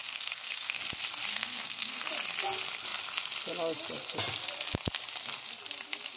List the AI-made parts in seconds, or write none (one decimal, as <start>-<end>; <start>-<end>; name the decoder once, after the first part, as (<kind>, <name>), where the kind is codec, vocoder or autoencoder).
0.0-0.8 (codec, SNAC); 1.3-2.1